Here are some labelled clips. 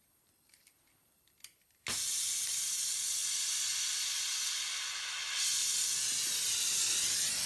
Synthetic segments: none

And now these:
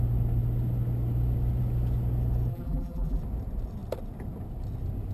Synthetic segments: 2.5-3.2

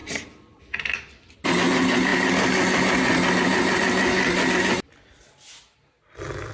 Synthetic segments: 0.0-0.6

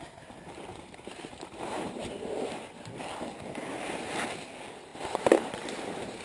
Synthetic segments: 0.7-2.7; 4.9-6.2

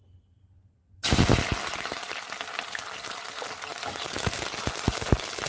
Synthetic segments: none

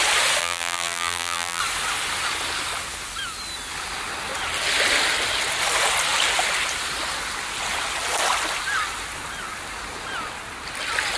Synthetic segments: 0.4-1.6

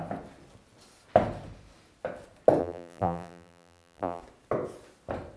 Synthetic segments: 2.6-4.2